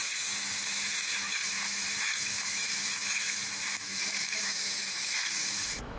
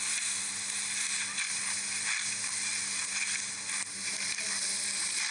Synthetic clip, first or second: first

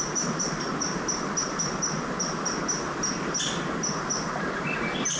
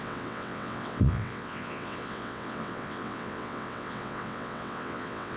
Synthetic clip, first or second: second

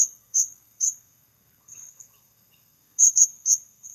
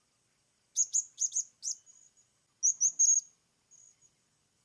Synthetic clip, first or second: first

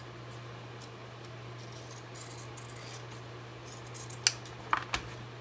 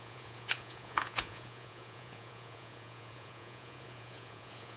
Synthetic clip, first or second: second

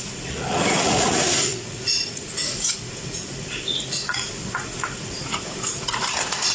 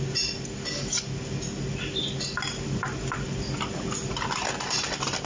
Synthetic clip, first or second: first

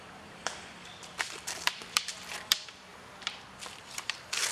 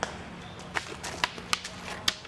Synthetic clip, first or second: first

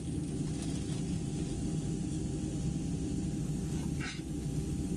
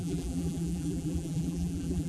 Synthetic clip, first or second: second